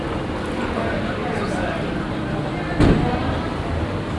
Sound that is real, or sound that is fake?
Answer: real